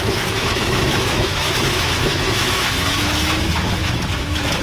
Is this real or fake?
fake